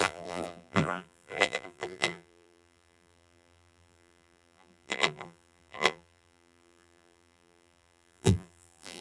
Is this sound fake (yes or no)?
yes